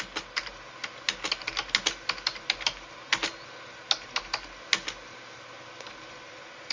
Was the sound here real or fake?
real